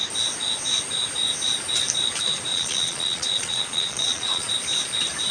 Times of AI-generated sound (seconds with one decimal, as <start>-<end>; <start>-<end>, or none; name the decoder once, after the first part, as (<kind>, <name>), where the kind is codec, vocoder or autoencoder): 2.5-4.5 (vocoder, Vocos)